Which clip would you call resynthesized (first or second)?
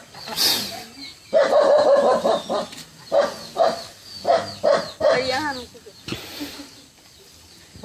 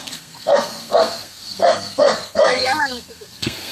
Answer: second